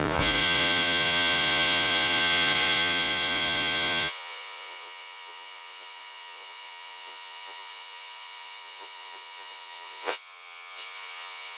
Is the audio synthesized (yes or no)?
yes